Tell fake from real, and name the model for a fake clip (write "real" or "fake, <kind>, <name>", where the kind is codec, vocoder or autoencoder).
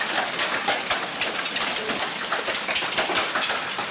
real